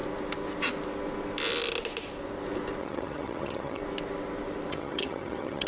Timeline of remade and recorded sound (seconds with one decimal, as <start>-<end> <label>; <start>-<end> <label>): 0.0-2.8 recorded; 2.8-3.8 remade; 3.8-4.7 recorded; 4.7-5.7 remade